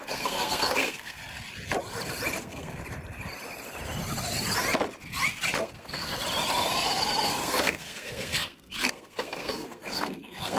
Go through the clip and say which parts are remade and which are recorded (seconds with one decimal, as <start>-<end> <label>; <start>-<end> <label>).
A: 0.0-1.2 remade; 1.2-2.4 recorded; 2.4-2.8 remade; 2.8-5.6 recorded; 5.6-6.1 remade; 6.1-7.3 recorded; 7.3-10.6 remade